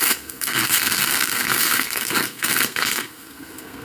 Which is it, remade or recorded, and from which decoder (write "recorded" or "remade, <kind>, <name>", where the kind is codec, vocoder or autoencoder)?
remade, codec, SNAC